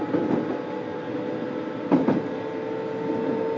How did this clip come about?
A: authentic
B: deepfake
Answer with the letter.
A